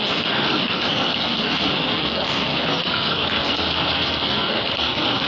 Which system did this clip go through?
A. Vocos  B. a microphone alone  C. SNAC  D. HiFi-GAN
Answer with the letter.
C